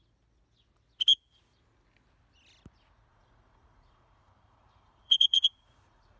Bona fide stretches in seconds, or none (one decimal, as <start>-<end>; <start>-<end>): 0.0-3.1